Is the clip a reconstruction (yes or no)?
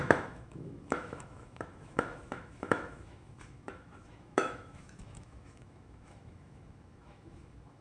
yes